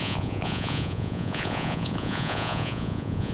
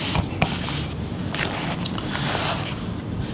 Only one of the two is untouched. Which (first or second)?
second